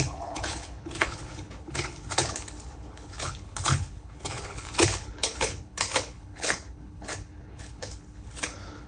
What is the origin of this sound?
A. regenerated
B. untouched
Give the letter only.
A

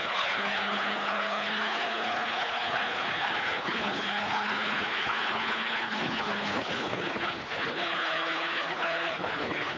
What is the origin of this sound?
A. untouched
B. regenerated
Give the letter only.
B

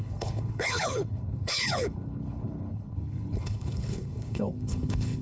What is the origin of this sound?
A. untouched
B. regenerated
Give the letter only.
B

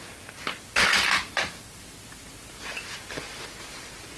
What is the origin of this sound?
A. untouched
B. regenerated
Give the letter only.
A